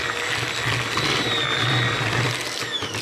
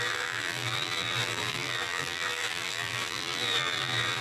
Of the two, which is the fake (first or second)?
second